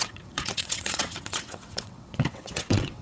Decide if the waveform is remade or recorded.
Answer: remade